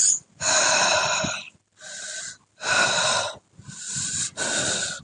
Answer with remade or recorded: recorded